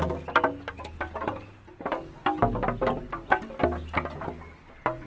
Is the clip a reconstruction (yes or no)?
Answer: no